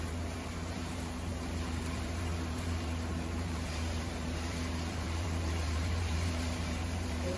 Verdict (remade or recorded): remade